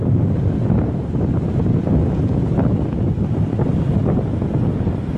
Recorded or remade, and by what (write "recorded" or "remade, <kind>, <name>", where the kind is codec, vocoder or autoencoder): recorded